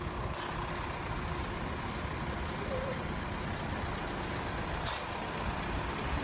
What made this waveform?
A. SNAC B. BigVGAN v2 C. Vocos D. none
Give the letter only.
D